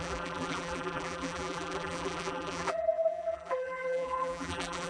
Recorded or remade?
remade